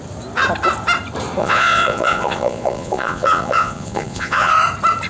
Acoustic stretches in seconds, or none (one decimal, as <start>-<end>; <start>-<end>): 0.0-1.4; 4.5-5.1